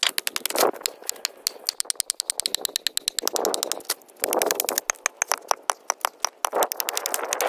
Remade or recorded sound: recorded